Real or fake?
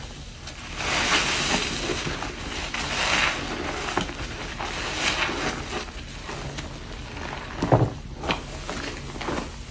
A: real